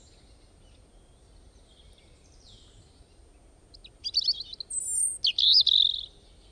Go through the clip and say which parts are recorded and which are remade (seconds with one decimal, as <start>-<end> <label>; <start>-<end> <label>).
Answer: 0.0-6.5 recorded